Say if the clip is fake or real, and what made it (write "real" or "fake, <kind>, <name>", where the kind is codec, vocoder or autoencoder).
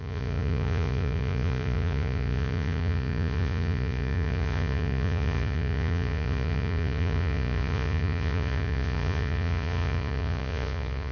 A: fake, vocoder, Vocos